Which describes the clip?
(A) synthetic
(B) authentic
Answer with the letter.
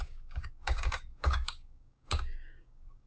A